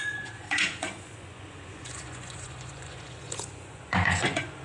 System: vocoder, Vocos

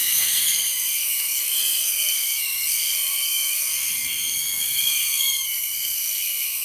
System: codec, SNAC